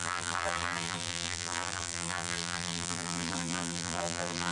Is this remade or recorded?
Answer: remade